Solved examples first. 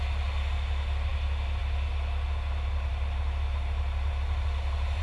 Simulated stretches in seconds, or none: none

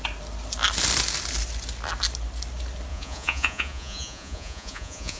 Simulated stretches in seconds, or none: 2.9-5.2 (vocoder, Vocos)

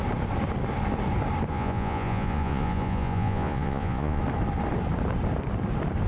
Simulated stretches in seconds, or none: 1.5-4.2 (vocoder, Vocos)

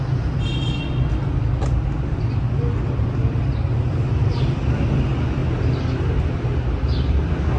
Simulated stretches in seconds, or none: none

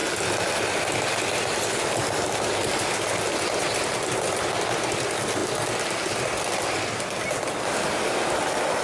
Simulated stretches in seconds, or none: none

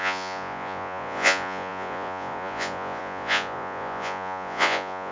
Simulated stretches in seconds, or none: 0.0-5.1 (vocoder, Vocos)